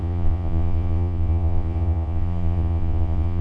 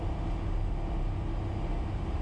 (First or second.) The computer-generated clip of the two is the first